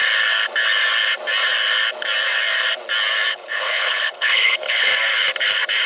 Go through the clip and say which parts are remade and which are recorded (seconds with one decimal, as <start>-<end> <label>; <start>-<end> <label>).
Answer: 0.0-3.3 recorded; 3.3-4.9 remade; 4.9-5.9 recorded